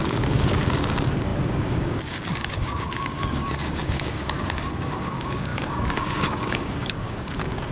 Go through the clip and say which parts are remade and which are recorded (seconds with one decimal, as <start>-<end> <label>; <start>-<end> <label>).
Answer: 0.0-7.7 remade